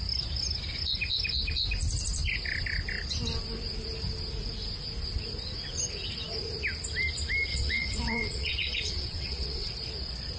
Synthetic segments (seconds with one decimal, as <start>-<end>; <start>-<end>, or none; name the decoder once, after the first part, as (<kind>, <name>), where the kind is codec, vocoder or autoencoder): 7.5-9.7 (vocoder, WaveNeXt)